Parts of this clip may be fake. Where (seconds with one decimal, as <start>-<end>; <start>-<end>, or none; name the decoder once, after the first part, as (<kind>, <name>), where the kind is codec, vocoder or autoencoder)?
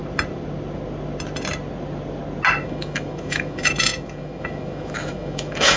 2.6-5.8 (autoencoder, DAC-VAE)